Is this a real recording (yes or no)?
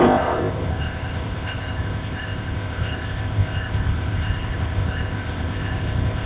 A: no